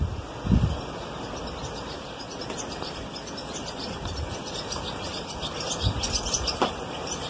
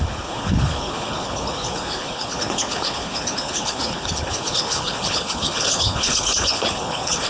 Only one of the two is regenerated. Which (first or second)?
second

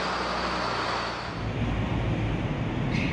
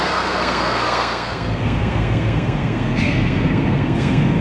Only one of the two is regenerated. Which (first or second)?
second